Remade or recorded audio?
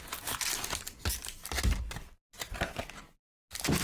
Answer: recorded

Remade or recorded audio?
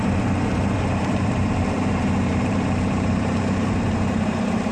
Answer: remade